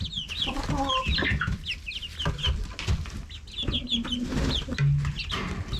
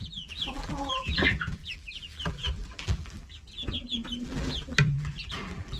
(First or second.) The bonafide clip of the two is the first